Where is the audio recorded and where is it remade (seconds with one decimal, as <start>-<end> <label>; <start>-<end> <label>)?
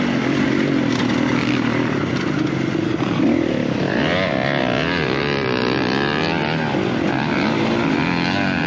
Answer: 0.0-8.7 recorded